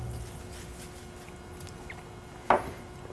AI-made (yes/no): no